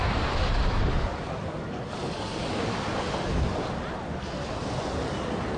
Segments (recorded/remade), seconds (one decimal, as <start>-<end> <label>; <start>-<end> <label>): 0.0-5.6 recorded